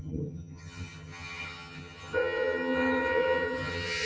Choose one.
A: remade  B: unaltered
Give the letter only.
A